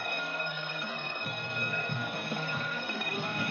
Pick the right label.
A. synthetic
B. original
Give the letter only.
A